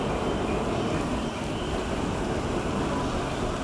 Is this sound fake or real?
real